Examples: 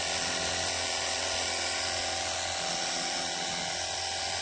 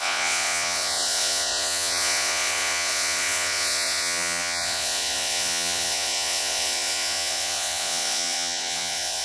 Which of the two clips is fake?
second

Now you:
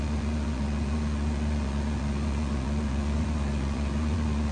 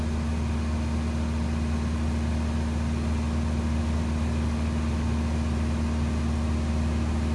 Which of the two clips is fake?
first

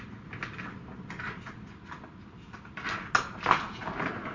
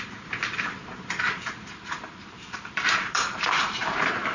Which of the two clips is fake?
second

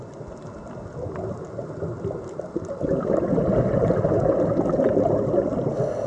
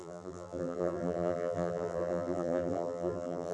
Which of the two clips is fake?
second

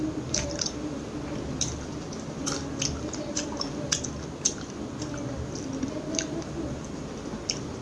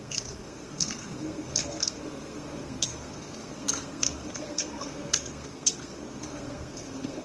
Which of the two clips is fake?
second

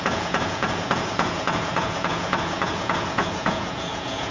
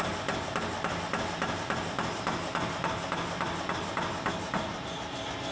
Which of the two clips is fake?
first